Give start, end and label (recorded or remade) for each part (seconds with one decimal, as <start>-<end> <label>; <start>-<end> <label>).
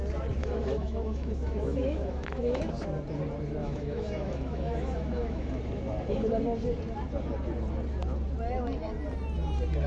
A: 0.0-0.4 recorded; 0.4-2.6 remade; 2.6-3.6 recorded; 3.6-5.6 remade; 5.6-9.9 recorded